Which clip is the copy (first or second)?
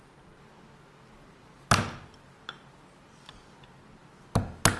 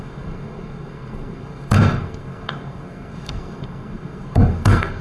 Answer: second